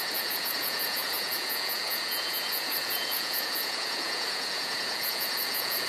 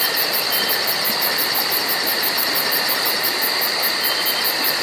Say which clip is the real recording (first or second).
second